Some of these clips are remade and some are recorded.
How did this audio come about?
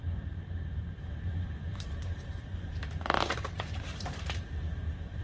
remade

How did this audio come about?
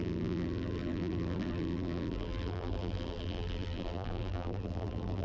remade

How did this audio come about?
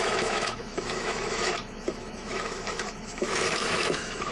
remade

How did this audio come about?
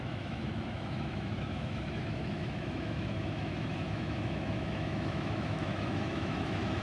remade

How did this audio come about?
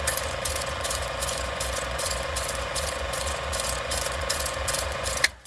remade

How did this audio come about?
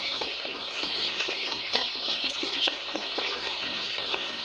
remade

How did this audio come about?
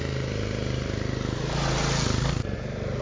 recorded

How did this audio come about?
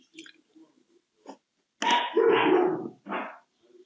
recorded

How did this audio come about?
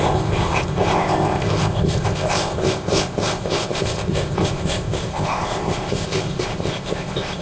remade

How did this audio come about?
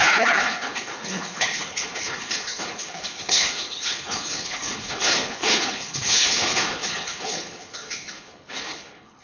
remade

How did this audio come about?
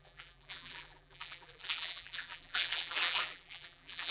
remade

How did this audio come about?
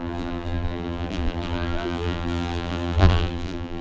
remade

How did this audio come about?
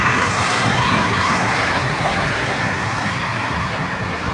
remade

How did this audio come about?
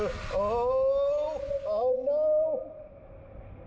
recorded